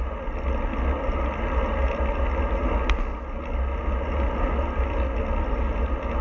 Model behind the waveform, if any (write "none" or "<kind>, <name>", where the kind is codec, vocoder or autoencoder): none